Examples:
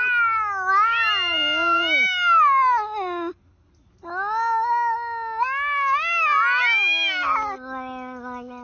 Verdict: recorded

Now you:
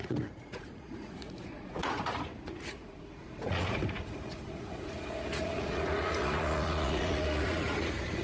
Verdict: remade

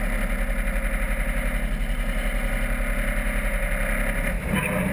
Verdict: recorded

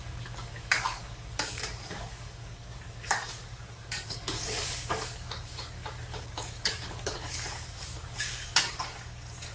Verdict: remade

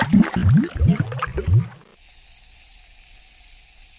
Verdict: recorded